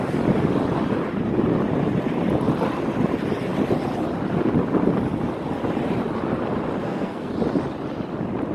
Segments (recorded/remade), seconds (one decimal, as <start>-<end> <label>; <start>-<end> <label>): 0.0-6.8 recorded; 6.8-7.3 remade; 7.3-8.5 recorded